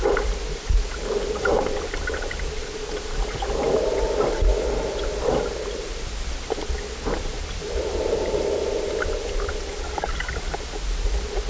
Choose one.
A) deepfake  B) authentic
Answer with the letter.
B